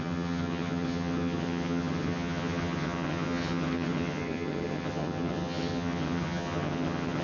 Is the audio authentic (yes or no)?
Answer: no